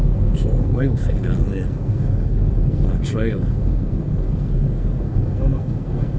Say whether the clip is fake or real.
fake